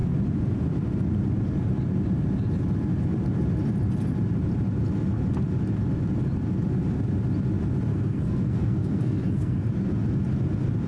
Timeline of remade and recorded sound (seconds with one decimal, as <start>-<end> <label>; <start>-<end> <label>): 0.0-7.9 recorded; 7.9-9.7 remade; 9.7-10.9 recorded